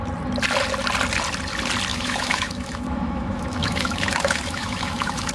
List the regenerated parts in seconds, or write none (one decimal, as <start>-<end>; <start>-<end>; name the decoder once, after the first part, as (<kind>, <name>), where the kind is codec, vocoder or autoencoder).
1.9-5.3 (autoencoder, DAC-VAE)